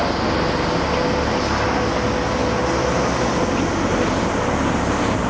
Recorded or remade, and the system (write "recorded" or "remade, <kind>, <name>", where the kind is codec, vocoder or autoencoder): recorded